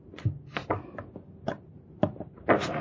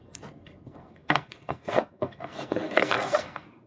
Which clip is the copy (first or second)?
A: second